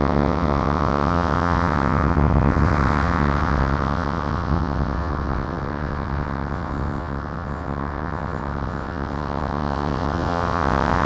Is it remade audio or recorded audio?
remade